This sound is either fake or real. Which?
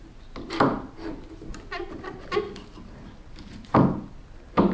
real